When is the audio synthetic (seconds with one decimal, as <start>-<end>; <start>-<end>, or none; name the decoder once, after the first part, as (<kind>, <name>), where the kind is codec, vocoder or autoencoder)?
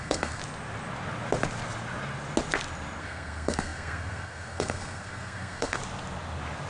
0.0-0.4 (codec, SNAC); 3.0-5.8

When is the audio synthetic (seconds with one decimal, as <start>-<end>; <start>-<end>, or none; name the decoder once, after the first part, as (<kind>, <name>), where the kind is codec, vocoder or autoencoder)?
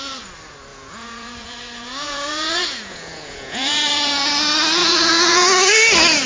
0.7-4.3 (vocoder, Vocos); 4.8-5.7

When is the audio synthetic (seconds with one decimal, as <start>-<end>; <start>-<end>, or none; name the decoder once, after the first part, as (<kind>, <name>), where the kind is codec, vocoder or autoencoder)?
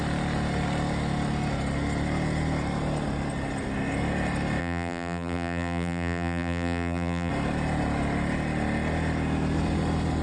4.6-7.3 (vocoder, BigVGAN v2)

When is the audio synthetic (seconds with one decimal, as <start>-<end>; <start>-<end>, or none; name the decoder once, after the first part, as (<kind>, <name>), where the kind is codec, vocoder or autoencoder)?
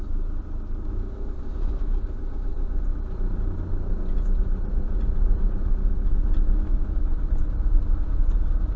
none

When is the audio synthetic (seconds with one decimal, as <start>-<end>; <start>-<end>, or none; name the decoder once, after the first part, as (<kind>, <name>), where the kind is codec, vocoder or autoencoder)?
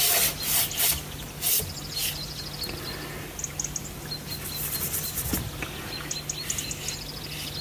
none